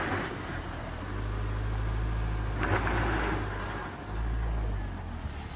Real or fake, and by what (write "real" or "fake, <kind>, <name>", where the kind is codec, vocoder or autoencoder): real